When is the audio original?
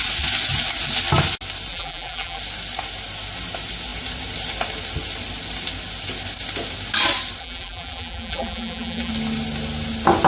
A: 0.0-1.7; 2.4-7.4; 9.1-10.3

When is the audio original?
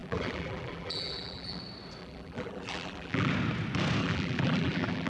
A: 1.6-2.0; 3.3-4.0